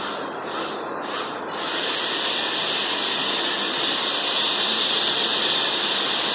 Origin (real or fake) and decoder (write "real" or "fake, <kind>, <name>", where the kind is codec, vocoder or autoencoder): real